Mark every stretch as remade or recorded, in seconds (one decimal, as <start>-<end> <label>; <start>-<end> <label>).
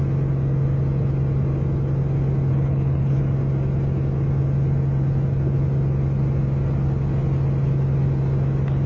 0.0-2.5 recorded; 2.5-3.2 remade; 3.2-8.9 recorded